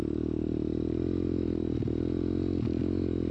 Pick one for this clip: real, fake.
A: real